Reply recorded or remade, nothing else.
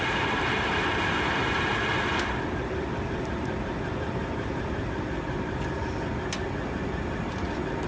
recorded